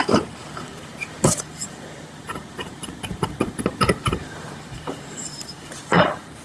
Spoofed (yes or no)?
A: yes